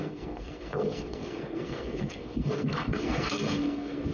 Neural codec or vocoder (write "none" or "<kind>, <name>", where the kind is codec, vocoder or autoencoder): codec, SNAC